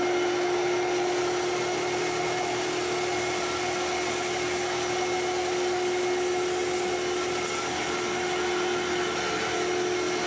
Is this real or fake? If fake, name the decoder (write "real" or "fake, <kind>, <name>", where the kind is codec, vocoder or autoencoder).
real